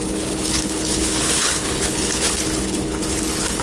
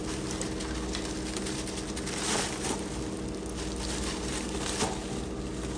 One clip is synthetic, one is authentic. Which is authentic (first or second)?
second